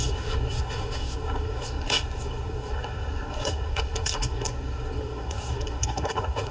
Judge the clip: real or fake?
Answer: fake